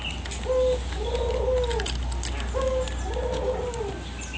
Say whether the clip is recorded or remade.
recorded